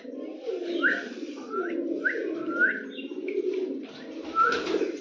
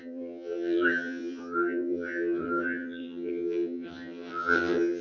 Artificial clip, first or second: second